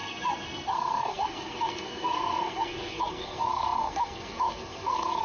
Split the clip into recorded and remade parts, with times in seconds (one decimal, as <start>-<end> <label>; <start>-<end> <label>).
0.0-5.2 remade